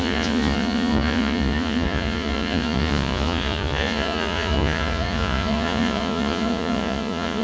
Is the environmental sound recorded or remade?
remade